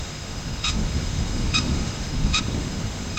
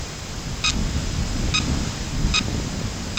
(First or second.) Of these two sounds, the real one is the second